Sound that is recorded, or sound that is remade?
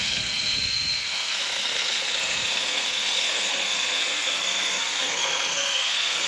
remade